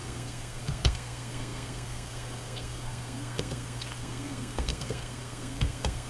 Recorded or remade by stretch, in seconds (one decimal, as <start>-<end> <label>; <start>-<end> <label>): 0.0-6.1 remade